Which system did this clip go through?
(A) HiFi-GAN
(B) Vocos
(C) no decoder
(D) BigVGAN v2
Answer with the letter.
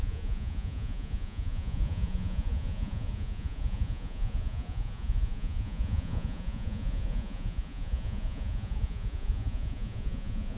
B